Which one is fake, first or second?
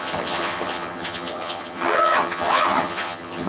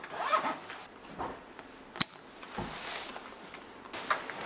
first